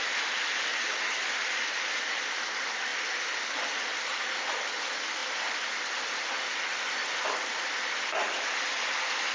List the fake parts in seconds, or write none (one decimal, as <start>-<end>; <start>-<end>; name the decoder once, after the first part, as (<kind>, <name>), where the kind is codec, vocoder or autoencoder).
0.7-1.2 (vocoder, HiFi-GAN)